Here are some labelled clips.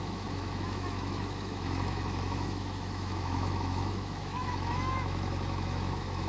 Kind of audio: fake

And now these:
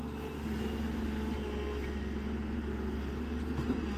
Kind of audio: real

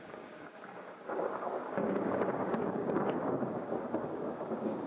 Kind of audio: fake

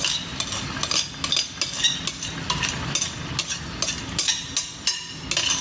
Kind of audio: real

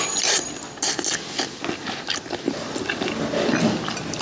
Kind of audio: real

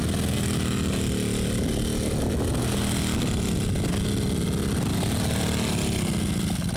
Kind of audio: real